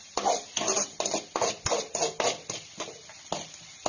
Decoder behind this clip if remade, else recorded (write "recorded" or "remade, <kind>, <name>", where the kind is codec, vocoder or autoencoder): recorded